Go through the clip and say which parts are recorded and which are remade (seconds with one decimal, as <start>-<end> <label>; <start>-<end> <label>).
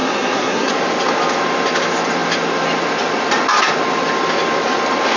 0.0-0.7 remade; 0.7-5.2 recorded